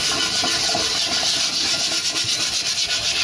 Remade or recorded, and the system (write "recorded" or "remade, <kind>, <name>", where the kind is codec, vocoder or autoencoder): recorded